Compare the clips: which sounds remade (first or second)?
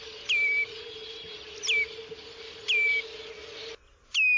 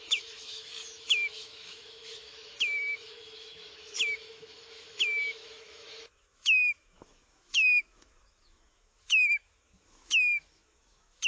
second